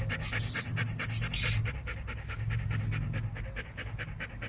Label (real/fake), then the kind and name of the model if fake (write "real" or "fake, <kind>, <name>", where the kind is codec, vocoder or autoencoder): real